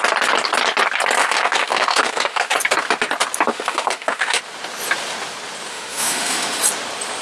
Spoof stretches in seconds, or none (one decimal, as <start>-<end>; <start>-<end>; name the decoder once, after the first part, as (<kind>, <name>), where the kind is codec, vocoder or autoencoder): 1.2-2.5 (autoencoder, DAC-VAE); 3.5-4.4; 5.7-6.6